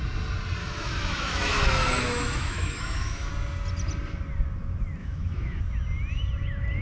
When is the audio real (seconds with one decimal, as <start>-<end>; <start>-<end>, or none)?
0.0-0.6; 3.3-5.0; 5.6-6.8